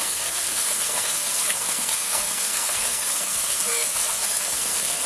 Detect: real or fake fake